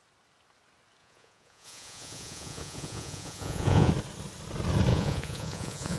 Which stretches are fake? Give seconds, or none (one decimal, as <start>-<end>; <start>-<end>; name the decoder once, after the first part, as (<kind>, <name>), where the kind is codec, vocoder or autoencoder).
1.0-3.9 (vocoder, Vocos); 4.9-6.0